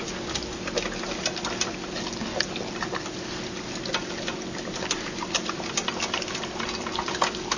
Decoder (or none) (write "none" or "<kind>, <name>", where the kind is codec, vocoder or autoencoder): none